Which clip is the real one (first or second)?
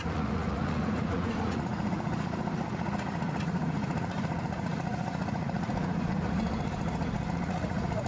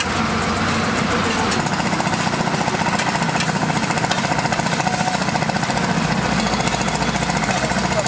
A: second